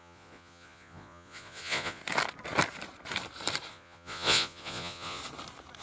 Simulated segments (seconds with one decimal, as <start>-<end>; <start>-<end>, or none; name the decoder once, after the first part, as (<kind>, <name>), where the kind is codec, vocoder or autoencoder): 0.0-2.0 (vocoder, Vocos); 3.7-5.2